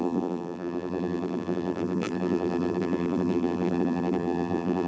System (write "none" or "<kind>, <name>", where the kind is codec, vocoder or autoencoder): vocoder, BigVGAN v2